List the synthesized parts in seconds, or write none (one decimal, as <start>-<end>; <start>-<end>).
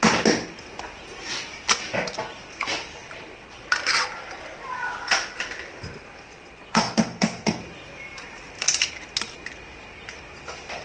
6.7-7.6